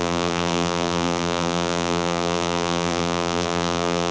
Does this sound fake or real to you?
fake